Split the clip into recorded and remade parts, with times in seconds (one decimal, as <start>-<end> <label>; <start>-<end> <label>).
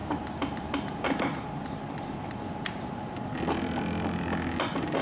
0.0-3.0 remade; 3.0-5.0 recorded